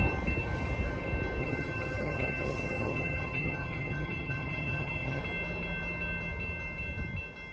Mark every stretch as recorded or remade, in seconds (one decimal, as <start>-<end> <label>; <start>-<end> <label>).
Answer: 0.0-1.4 recorded; 1.4-5.2 remade; 5.2-7.5 recorded